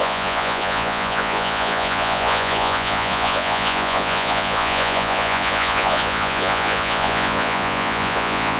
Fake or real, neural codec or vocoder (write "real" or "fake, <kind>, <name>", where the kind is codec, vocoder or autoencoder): fake, vocoder, Vocos